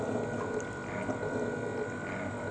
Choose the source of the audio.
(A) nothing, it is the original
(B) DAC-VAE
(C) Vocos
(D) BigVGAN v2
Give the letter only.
A